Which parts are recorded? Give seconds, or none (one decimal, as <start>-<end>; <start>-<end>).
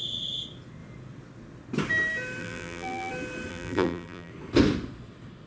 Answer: 0.0-2.4; 3.1-3.5; 4.3-5.5